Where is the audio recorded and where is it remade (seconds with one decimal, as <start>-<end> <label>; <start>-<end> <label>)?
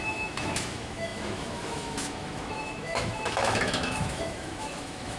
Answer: 0.0-5.2 remade